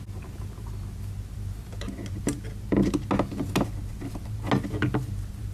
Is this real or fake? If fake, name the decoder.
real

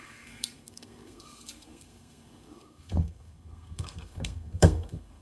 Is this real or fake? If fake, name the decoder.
fake, codec, SNAC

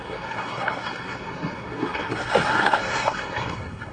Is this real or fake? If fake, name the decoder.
fake, codec, SNAC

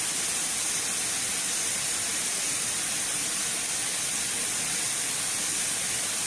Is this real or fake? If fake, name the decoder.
real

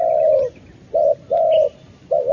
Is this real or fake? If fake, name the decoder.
real